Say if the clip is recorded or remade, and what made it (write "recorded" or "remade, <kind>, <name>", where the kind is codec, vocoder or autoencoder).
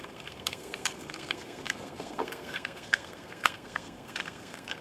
remade, codec, SNAC